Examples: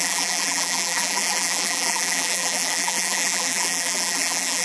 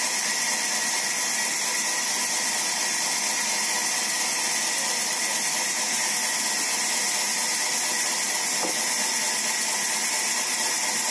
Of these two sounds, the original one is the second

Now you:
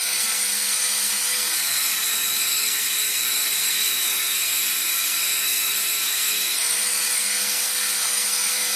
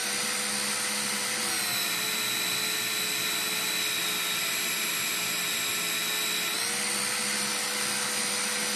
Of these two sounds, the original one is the second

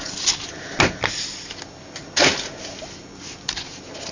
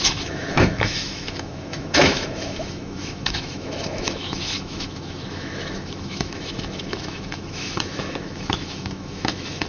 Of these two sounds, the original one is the first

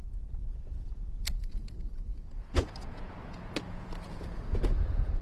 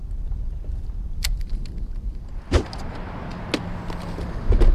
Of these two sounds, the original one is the second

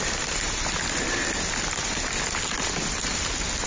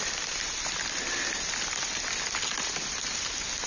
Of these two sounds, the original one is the first